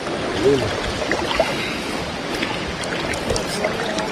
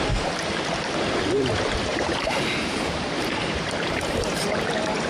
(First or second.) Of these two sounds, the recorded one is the first